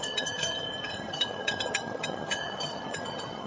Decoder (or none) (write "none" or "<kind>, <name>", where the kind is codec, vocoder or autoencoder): vocoder, HiFi-GAN